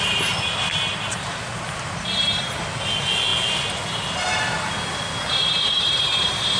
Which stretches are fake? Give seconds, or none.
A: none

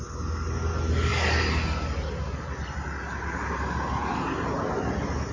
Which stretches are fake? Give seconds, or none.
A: none

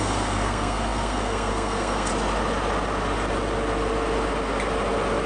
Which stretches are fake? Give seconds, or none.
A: 0.0-2.1 (codec, SNAC)

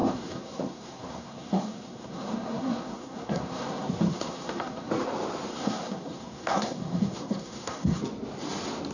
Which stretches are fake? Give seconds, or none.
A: 0.0-4.9 (codec, SNAC); 5.5-8.0

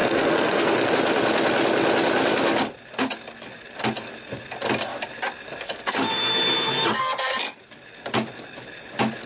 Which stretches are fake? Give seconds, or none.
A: 0.0-0.9 (codec, SNAC)

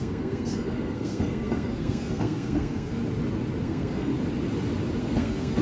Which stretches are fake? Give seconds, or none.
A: 0.0-3.0 (codec, SNAC); 3.6-4.1; 5.0-5.6

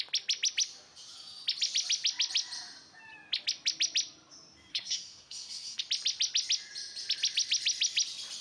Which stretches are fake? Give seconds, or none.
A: 4.7-5.8 (codec, SNAC)